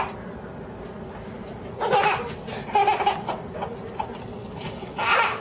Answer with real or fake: real